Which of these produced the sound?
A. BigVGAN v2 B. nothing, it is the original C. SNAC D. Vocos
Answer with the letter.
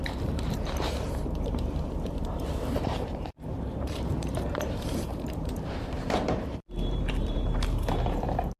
A